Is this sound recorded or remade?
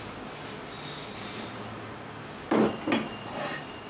recorded